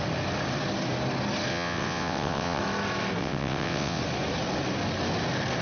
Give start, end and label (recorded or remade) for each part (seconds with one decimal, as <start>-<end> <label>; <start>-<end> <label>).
0.0-1.5 recorded; 1.5-2.6 remade; 2.6-3.2 recorded; 3.2-4.0 remade; 4.0-5.6 recorded